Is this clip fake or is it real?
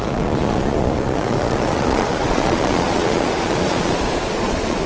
fake